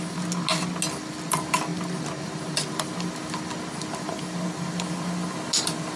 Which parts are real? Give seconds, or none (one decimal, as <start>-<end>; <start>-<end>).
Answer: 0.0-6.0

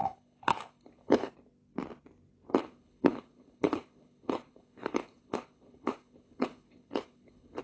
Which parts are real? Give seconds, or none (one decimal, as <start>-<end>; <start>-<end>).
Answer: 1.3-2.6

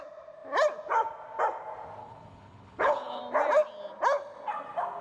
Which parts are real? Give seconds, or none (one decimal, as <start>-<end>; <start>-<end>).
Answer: 0.0-2.0; 3.2-5.0